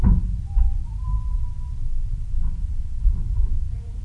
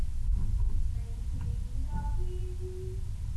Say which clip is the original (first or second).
second